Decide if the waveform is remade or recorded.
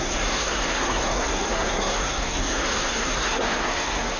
remade